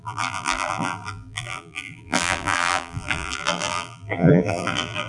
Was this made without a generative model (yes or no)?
no